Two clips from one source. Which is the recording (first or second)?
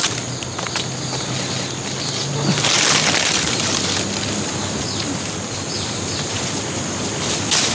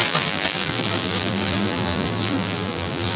first